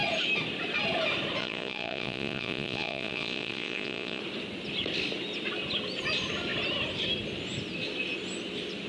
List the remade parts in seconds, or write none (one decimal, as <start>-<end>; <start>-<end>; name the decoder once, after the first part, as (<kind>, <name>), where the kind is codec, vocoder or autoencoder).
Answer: 1.4-4.2 (vocoder, Vocos)